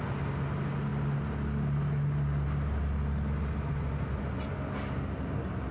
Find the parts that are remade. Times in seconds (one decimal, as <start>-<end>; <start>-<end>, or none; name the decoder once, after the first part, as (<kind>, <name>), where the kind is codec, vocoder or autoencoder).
none